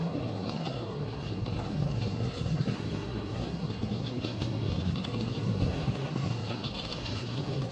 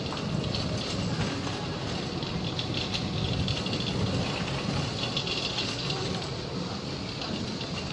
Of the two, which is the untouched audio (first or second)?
second